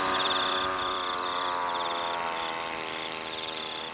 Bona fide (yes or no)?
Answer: no